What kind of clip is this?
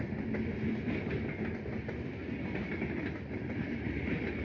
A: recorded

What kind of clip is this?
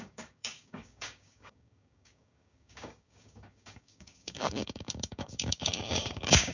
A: remade